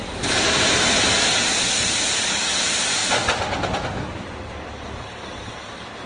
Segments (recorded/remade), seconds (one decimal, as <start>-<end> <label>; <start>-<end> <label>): 0.0-6.1 recorded